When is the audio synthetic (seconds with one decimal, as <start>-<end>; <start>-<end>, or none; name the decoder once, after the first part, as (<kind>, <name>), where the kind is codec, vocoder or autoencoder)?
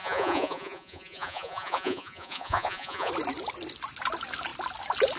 0.0-3.1 (vocoder, Vocos)